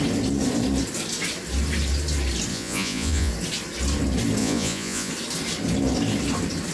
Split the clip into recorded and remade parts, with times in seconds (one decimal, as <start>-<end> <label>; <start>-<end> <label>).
0.0-2.5 recorded; 2.5-3.3 remade; 3.3-4.4 recorded; 4.4-5.1 remade; 5.1-6.7 recorded